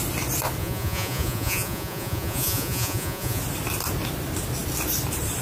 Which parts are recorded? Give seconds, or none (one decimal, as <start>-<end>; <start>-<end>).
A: 0.0-0.6; 3.4-5.4